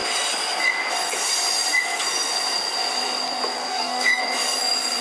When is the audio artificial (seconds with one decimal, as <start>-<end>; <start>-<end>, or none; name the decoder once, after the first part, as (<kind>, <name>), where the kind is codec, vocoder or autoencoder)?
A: 3.5-4.2 (codec, DAC)